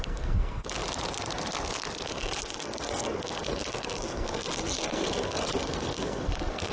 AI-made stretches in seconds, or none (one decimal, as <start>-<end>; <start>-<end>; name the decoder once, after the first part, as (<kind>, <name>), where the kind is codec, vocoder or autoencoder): 0.0-0.8 (codec, SNAC); 2.1-6.7